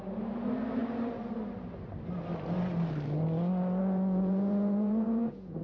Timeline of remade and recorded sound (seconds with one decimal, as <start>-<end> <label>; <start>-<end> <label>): 0.0-3.8 recorded; 3.8-5.6 remade